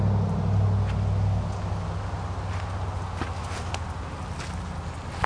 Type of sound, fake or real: real